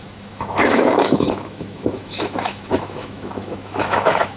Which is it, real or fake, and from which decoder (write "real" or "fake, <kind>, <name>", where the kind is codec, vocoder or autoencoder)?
fake, autoencoder, DAC-VAE